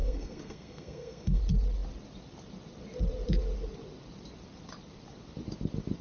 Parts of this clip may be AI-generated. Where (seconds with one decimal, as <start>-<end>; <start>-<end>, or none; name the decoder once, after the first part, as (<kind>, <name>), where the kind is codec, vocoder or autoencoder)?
0.0-1.4 (codec, SNAC)